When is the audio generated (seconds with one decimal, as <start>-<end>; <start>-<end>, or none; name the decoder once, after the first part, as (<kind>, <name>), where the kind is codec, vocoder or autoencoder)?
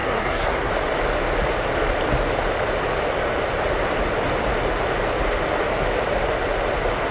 0.0-0.7 (codec, SNAC)